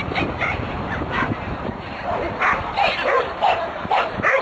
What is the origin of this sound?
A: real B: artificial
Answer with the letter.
B